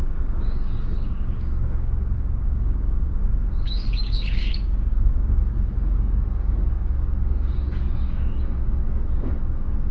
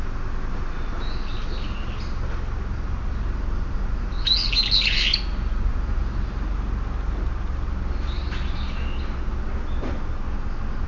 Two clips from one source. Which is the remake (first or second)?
first